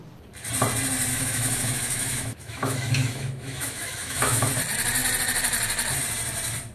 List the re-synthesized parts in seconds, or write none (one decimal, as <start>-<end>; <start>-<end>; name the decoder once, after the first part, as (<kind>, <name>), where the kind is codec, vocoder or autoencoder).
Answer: 1.1-4.5 (autoencoder, DAC-VAE)